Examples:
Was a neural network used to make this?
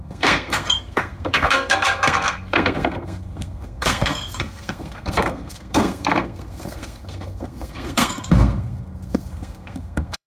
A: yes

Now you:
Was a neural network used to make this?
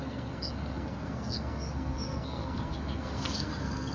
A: yes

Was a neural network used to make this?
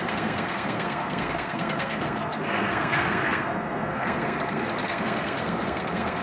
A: yes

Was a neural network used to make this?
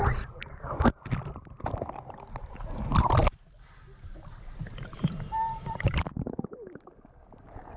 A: no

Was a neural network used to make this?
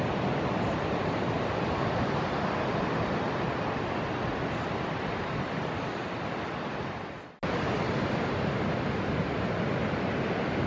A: no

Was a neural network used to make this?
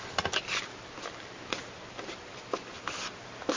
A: no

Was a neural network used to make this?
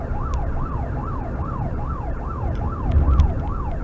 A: no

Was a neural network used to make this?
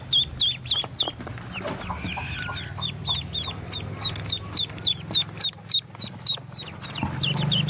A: no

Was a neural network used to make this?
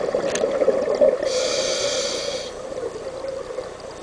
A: no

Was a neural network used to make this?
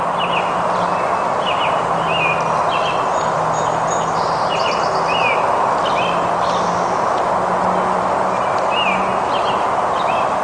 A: no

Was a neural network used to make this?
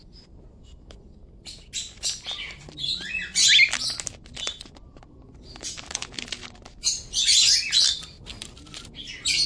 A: no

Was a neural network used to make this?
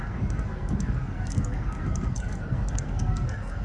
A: yes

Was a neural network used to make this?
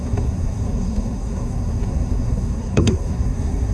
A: yes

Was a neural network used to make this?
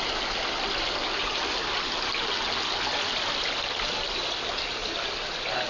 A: no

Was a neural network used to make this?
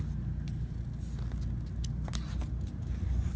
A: no